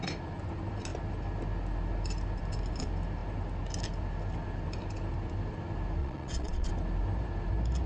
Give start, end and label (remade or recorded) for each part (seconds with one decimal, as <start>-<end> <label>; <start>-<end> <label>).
0.0-6.0 recorded; 6.0-6.7 remade; 6.7-7.9 recorded